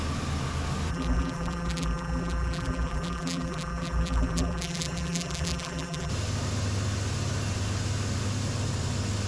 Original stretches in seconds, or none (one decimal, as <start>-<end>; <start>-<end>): 0.0-0.9; 6.1-9.3

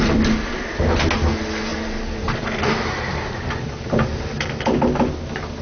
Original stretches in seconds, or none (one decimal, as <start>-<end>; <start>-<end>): 0.0-1.7; 5.1-5.6

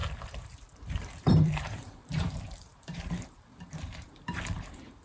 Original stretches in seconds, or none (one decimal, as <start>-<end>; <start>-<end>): none

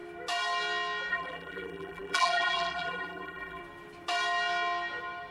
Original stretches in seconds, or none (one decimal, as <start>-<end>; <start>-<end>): 0.0-1.1; 3.6-5.3

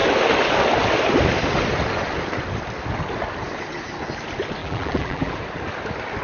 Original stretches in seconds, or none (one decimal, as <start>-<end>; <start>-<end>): 0.0-4.6; 5.3-6.2

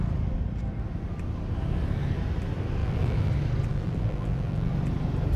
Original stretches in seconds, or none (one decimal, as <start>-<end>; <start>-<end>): 0.0-2.8; 3.3-3.7; 4.7-5.4